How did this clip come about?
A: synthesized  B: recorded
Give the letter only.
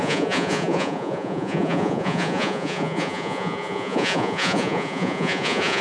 A